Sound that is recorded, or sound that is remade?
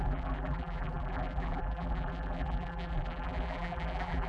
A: remade